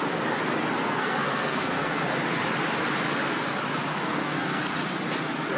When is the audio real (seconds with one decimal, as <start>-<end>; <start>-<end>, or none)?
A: 0.0-0.8; 2.1-3.9; 4.6-5.6